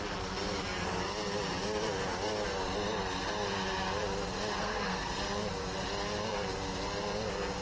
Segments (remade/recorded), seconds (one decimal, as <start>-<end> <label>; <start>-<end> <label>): 0.0-4.6 recorded; 4.6-5.1 remade; 5.1-7.6 recorded